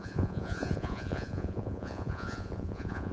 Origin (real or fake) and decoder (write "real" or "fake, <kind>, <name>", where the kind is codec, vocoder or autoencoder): fake, vocoder, Vocos